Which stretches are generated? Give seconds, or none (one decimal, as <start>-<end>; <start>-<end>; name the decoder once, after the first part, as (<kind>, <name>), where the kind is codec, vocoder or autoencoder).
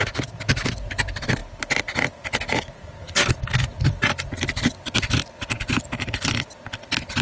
none